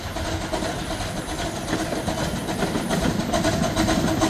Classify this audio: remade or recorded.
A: recorded